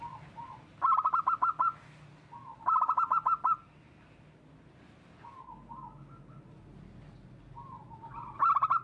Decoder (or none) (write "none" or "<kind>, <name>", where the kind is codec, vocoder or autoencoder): none